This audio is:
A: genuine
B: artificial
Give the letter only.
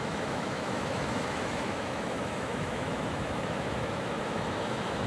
B